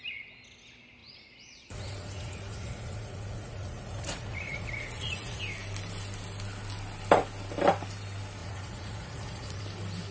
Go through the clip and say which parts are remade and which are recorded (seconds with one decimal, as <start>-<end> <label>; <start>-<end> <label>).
0.0-1.0 recorded; 1.0-5.4 remade; 5.4-8.4 recorded; 8.4-9.6 remade; 9.6-10.1 recorded